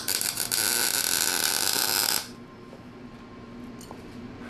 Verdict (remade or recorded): recorded